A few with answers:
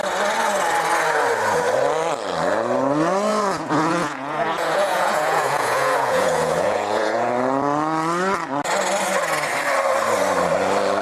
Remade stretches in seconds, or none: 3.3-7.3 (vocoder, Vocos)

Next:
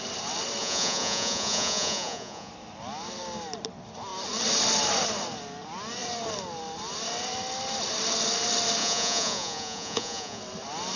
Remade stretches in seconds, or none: 0.6-2.5 (vocoder, Vocos); 8.8-10.4

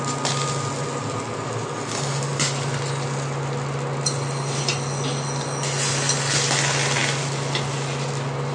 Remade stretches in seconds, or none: none